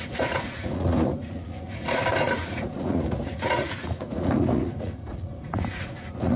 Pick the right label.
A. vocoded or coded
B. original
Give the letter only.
A